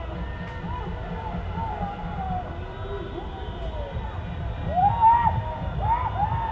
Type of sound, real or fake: real